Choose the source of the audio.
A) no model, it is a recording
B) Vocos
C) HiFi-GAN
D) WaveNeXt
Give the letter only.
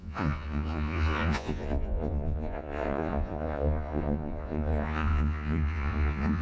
B